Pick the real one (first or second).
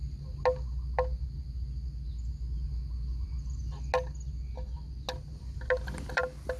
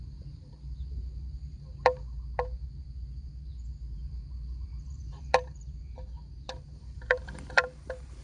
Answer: first